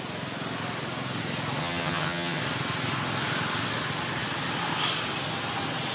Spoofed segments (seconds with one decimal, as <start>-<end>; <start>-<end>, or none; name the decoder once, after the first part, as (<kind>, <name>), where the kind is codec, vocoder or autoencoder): 1.6-2.4 (vocoder, HiFi-GAN)